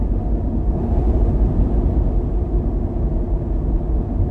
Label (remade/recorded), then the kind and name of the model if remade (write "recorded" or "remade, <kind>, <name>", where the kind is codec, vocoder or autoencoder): recorded